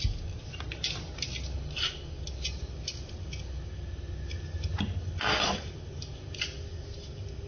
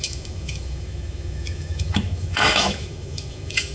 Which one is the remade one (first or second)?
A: second